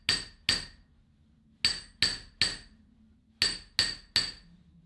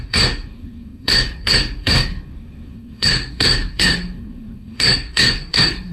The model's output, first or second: second